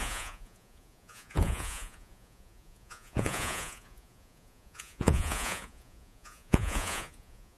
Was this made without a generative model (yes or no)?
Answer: no